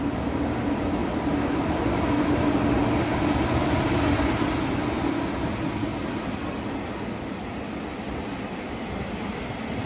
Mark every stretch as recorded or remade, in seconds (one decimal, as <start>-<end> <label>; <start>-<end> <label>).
0.0-1.0 recorded; 1.0-3.7 remade; 3.7-7.9 recorded; 7.9-8.9 remade; 8.9-9.9 recorded

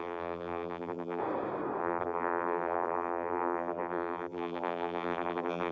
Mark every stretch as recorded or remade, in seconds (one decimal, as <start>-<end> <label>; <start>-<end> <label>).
0.0-1.2 remade; 1.2-1.8 recorded; 1.8-5.7 remade

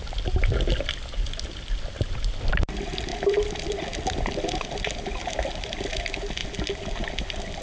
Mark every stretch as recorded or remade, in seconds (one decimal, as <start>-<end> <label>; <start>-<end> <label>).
0.0-3.1 recorded; 3.1-4.1 remade; 4.1-7.6 recorded